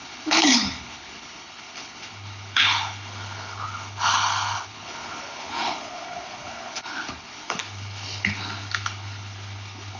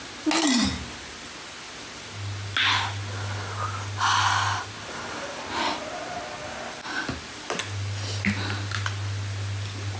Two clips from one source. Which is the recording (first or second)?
second